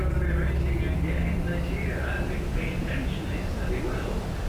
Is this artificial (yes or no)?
no